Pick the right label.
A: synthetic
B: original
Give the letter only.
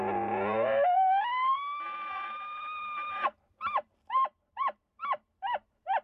A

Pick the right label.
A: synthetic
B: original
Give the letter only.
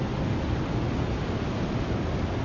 B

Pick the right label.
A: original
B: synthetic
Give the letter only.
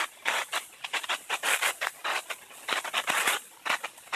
A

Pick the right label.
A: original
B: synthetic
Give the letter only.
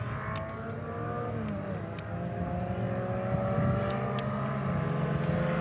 A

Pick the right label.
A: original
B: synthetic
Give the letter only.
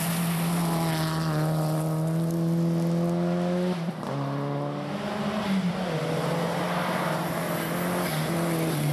A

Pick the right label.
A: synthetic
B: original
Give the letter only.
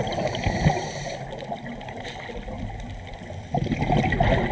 B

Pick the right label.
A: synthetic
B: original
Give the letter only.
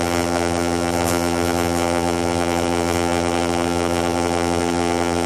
A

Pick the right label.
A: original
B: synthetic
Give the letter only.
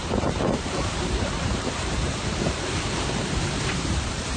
B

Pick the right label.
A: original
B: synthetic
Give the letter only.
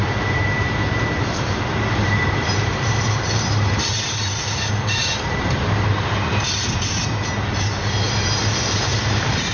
B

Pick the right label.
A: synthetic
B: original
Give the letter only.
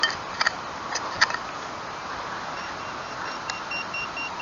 A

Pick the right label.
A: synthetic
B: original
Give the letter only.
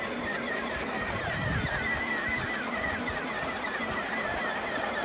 A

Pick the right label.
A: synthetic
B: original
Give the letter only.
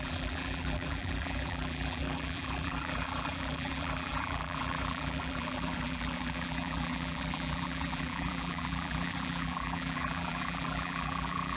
A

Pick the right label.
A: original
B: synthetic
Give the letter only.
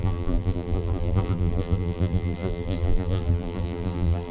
B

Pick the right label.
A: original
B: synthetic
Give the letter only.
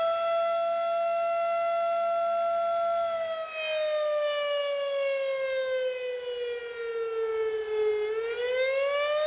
A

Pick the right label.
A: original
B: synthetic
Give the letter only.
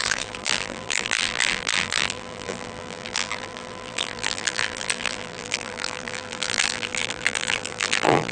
B